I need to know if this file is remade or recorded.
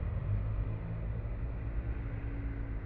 recorded